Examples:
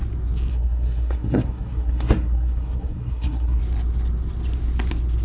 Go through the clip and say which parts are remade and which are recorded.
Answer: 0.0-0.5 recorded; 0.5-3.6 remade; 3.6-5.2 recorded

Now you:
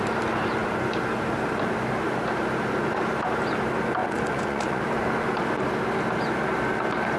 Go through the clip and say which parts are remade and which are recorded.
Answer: 0.0-4.0 recorded; 4.0-4.8 remade; 4.8-7.2 recorded

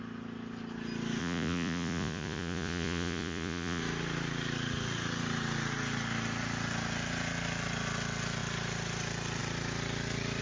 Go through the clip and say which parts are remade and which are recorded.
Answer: 0.0-1.2 recorded; 1.2-3.8 remade; 3.8-10.4 recorded

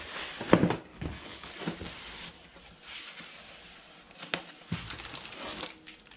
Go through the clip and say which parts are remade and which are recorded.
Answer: 0.0-0.9 recorded; 0.9-1.5 remade; 1.5-6.2 recorded

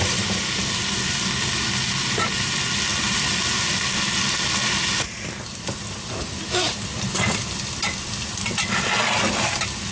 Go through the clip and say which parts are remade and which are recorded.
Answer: 0.0-9.9 recorded

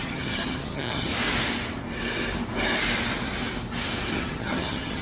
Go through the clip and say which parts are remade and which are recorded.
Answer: 0.0-1.1 remade; 1.1-4.1 recorded; 4.1-5.0 remade

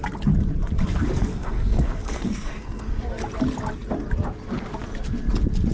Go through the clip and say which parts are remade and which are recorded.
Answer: 0.0-1.3 recorded; 1.3-3.1 remade; 3.1-5.7 recorded